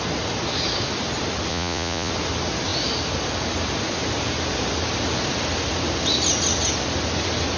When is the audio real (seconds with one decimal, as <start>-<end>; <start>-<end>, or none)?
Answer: 0.0-1.5; 2.1-7.6